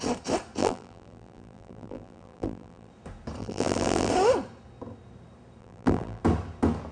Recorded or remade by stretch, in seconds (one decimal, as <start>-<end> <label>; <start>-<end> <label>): 0.0-0.6 recorded; 0.6-2.9 remade; 2.9-3.4 recorded; 3.4-4.1 remade; 4.1-5.6 recorded; 5.6-6.2 remade; 6.2-6.9 recorded